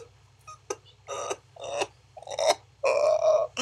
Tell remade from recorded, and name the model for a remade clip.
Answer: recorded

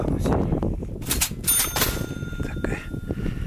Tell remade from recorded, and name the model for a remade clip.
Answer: recorded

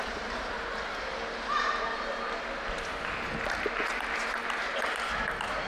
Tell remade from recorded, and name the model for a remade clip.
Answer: recorded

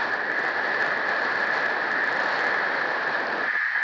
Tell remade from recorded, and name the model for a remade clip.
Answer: recorded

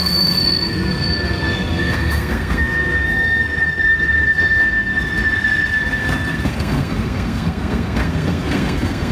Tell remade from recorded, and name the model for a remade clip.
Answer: remade, codec, SNAC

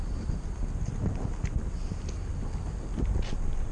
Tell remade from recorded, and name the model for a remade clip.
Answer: recorded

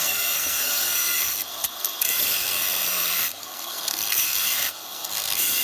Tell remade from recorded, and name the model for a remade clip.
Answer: remade, codec, SNAC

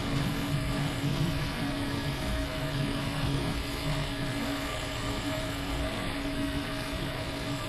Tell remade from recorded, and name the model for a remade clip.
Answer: remade, codec, SNAC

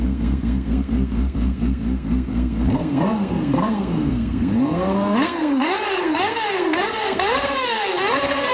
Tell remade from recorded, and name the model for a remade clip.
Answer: remade, codec, SNAC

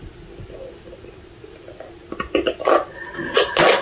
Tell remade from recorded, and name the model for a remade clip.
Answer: recorded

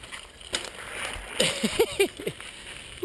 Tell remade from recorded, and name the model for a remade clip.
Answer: recorded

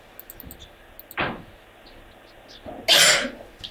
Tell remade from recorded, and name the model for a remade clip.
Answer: recorded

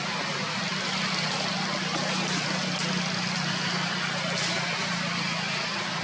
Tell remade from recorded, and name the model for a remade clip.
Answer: recorded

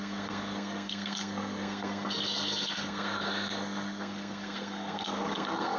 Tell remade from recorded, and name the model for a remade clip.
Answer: remade, codec, SNAC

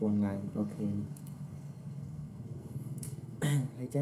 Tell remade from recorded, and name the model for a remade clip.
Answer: remade, codec, SNAC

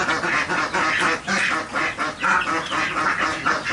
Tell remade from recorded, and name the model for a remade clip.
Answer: recorded